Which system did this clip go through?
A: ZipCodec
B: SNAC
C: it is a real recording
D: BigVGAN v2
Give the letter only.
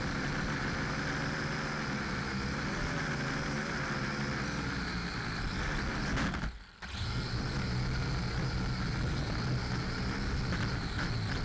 C